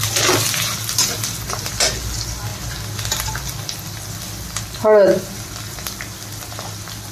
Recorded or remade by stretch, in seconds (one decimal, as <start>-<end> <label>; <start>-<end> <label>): 0.0-7.1 recorded